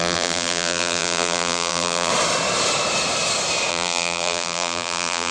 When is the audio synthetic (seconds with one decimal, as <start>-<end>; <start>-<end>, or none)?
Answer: 0.0-2.1; 3.7-5.3